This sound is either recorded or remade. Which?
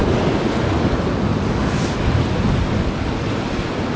recorded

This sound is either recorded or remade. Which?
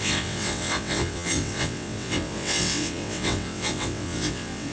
remade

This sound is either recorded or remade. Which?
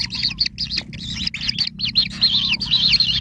recorded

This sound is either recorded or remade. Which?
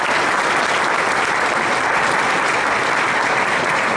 recorded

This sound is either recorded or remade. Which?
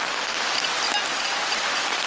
recorded